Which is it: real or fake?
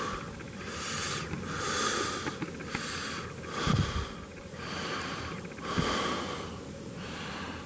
real